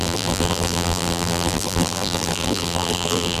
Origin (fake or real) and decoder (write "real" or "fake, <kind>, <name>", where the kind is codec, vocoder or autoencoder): fake, vocoder, BigVGAN v2